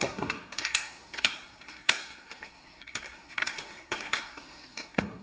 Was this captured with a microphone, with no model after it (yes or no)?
no